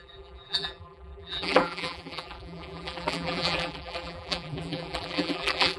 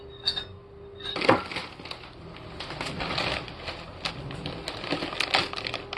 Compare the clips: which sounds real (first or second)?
second